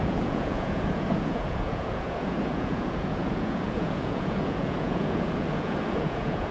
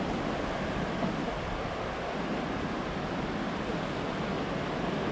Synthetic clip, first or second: first